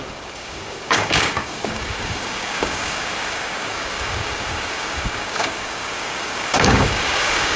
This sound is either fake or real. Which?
fake